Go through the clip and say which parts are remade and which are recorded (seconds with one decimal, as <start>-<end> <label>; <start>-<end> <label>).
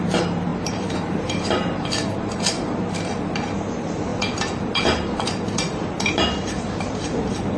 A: 0.0-7.6 remade